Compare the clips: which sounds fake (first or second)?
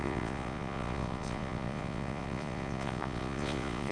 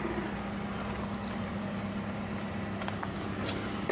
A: first